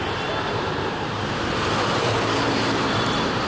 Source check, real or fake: fake